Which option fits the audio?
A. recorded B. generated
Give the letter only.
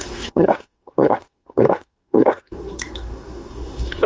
B